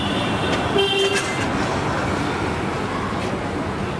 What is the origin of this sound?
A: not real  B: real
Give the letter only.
B